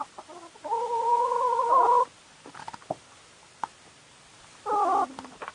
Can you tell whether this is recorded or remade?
remade